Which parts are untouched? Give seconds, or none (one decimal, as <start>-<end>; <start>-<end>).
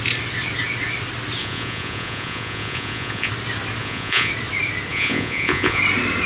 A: 0.0-1.4; 3.3-3.8; 4.3-4.9; 5.8-6.3